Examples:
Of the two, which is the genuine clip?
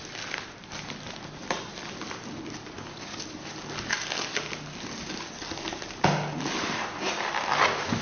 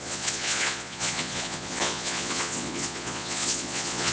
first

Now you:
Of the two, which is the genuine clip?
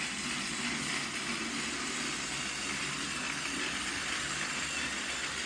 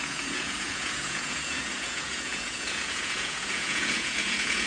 first